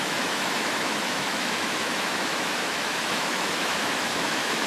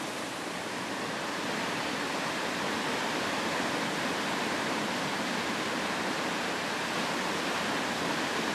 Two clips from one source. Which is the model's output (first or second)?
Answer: first